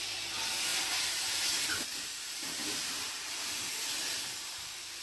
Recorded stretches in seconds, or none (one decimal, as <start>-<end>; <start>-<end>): 0.0-0.7; 3.7-5.0